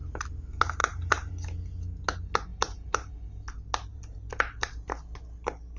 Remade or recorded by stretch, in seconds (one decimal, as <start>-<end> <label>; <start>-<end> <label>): 0.0-0.8 recorded; 0.8-1.3 remade; 1.3-2.5 recorded; 2.5-3.1 remade; 3.1-3.9 recorded; 3.9-4.9 remade; 4.9-5.8 recorded